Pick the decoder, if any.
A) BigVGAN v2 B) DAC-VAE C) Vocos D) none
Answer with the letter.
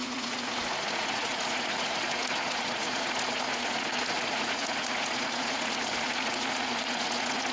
C